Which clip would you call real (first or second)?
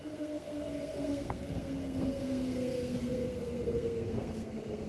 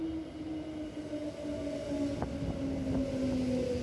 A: second